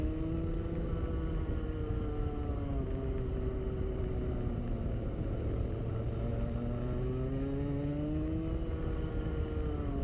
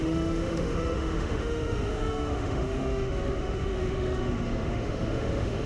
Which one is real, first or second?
first